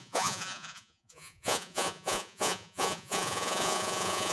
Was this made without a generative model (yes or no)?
no